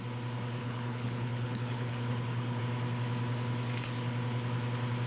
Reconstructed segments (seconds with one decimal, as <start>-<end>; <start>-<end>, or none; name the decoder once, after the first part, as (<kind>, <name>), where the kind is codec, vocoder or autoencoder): 0.6-2.6 (codec, HILCodec)